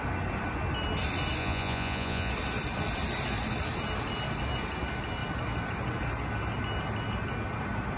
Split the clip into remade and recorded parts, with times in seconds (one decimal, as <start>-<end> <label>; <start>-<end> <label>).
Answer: 0.0-1.4 recorded; 1.4-2.3 remade; 2.3-8.0 recorded